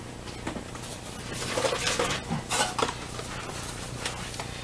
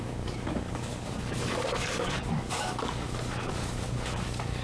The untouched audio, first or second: first